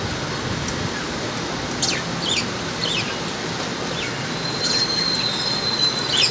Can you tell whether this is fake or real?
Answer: real